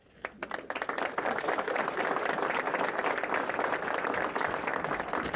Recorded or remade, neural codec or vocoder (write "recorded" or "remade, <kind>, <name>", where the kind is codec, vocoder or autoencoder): recorded